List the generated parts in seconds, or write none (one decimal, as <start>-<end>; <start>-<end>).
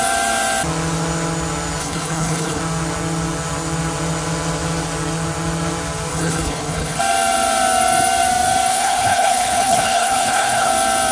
1.8-2.6; 6.1-7.0; 8.7-10.7